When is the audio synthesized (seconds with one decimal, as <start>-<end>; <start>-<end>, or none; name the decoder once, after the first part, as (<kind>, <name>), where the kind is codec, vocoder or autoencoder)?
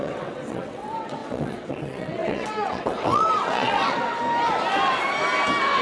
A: 0.0-4.2 (vocoder, WaveNeXt)